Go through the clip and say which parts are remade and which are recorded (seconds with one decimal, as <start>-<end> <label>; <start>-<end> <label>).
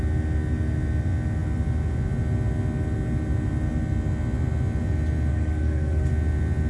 0.0-5.3 recorded; 5.3-6.1 remade; 6.1-6.7 recorded